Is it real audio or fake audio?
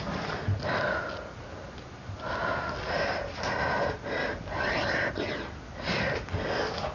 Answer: real